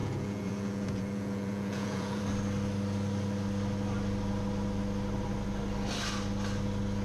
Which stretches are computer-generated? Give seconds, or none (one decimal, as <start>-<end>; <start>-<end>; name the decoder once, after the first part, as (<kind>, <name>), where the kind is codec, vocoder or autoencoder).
0.0-2.2 (vocoder, Vocos)